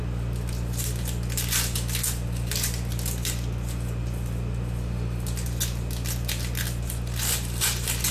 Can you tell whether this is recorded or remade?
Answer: recorded